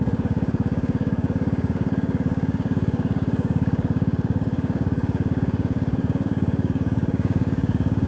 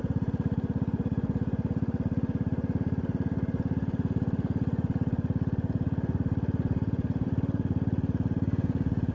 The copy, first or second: first